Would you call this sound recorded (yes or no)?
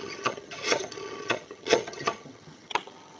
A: no